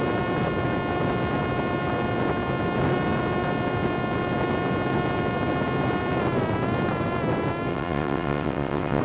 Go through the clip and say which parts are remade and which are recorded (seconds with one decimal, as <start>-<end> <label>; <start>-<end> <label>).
0.0-7.7 recorded; 7.7-9.0 remade